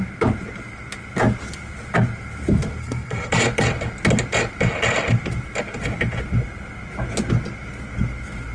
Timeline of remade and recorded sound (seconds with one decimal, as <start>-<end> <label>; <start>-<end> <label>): 0.0-2.8 recorded; 2.8-3.3 remade; 3.3-8.5 recorded